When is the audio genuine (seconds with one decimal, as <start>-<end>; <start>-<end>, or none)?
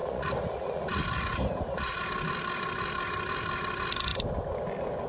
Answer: 2.0-5.1